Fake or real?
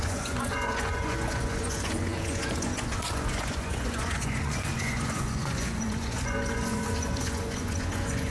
fake